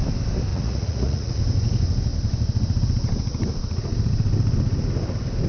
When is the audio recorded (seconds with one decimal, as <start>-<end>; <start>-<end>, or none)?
0.0-0.5; 1.4-5.5